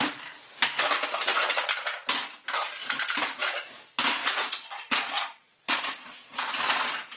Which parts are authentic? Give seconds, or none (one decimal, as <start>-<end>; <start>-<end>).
0.0-4.2; 6.8-7.2